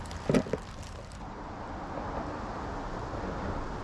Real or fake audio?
real